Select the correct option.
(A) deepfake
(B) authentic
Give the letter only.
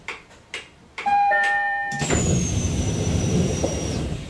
A